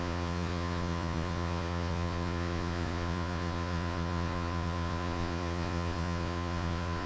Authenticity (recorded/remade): remade